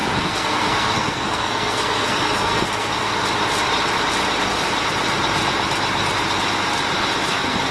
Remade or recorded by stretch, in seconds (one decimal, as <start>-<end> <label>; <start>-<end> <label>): 0.0-3.1 remade; 3.1-7.3 recorded; 7.3-7.7 remade